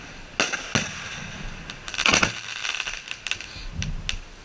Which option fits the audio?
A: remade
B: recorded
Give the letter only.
B